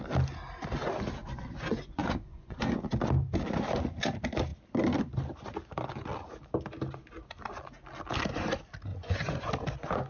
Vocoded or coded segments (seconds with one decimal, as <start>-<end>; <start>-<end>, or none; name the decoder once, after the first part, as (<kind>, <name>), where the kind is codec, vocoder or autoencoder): 1.2-2.8 (vocoder, Vocos); 8.9-9.5